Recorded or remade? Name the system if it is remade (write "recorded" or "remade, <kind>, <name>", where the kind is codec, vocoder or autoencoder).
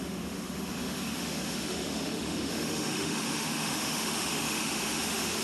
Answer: remade, autoencoder, DAC-VAE